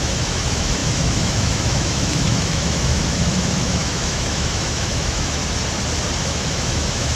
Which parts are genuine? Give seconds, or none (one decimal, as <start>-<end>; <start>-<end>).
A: 5.4-6.2